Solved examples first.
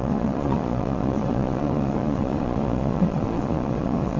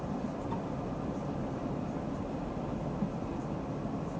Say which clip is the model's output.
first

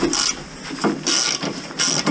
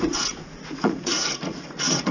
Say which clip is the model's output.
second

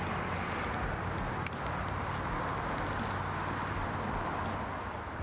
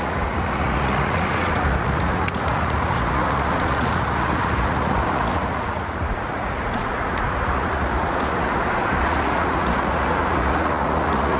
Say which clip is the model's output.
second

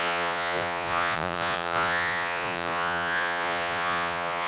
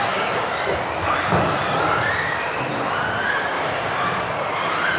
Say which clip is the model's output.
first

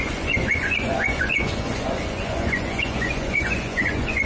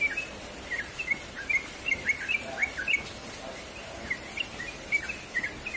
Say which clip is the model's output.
first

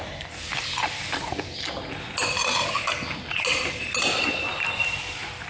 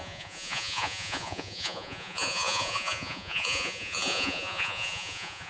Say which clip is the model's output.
second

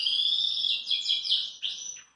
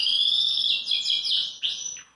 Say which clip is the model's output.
first